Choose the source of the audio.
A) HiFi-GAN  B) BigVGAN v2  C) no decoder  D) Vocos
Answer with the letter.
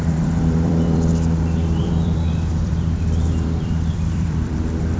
B